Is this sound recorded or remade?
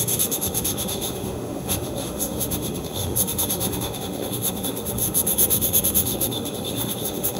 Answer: remade